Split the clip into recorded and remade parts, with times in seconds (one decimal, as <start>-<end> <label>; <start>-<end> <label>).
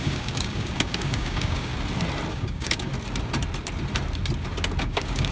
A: 0.0-1.7 remade; 1.7-2.3 recorded; 2.3-2.9 remade; 2.9-4.8 recorded; 4.8-5.3 remade